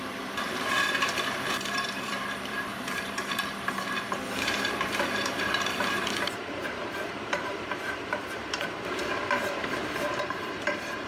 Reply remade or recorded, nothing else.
remade